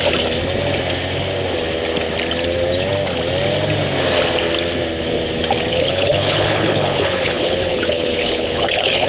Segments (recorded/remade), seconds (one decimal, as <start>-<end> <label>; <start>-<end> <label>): 0.0-5.7 recorded; 5.7-9.1 remade